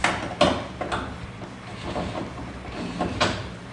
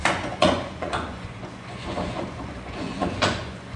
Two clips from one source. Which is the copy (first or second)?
second